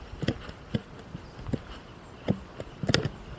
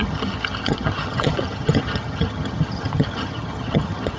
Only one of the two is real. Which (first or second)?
first